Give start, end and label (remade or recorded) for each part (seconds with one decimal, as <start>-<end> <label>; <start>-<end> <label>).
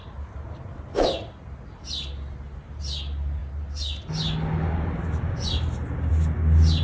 0.0-6.8 recorded